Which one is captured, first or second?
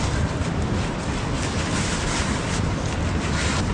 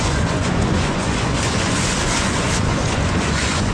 first